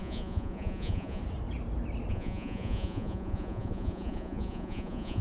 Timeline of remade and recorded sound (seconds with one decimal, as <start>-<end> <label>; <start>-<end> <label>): 0.0-1.2 remade; 1.2-2.1 recorded; 2.1-5.2 remade